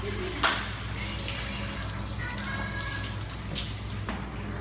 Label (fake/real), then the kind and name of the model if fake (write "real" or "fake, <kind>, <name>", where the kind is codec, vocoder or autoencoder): real